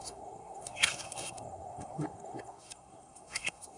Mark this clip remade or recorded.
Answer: remade